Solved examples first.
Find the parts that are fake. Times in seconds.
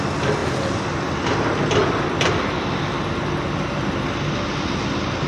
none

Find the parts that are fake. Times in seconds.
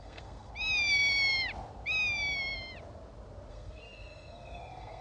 0.0-0.5; 3.5-5.0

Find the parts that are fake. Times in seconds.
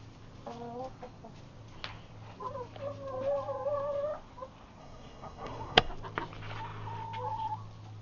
4.8-5.9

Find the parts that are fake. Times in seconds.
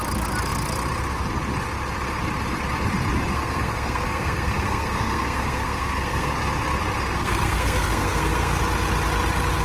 3.3-6.3; 7.1-8.6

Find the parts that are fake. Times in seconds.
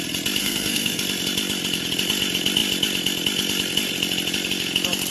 0.4-1.0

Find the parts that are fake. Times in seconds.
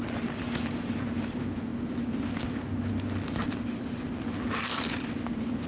none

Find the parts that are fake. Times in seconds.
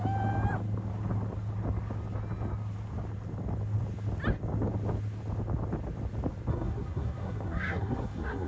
6.5-8.5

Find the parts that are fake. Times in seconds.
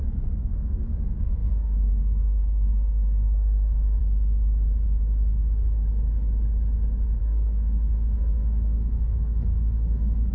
0.0-4.0; 7.2-10.3